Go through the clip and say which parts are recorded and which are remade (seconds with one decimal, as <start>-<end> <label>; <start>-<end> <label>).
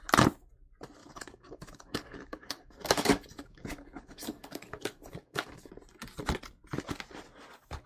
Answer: 0.0-1.0 recorded; 1.0-5.7 remade; 5.7-7.9 recorded